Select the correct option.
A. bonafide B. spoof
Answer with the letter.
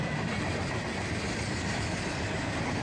A